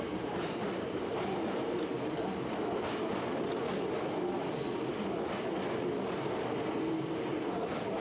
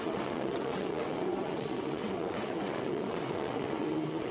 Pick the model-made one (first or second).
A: second